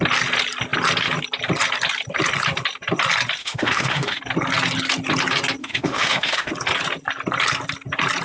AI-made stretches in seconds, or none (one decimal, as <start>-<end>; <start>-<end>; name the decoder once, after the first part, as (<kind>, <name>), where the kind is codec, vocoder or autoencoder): 3.4-4.2 (autoencoder, DAC-VAE); 5.6-6.5